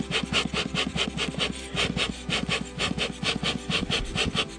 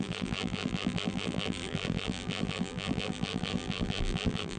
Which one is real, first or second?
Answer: first